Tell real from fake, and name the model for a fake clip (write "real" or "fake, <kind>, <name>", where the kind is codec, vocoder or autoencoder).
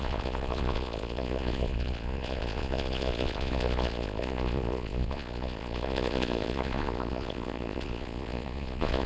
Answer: fake, vocoder, Vocos